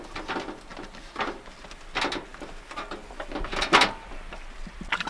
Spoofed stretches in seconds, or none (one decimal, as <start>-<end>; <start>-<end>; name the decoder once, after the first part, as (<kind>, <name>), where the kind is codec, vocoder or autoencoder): none